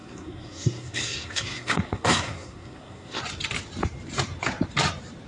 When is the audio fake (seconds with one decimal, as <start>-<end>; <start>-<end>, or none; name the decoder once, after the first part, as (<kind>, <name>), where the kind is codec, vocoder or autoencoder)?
0.0-3.2 (codec, SNAC)